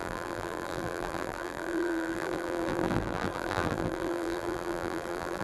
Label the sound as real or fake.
fake